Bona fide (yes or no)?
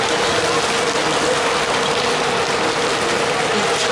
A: yes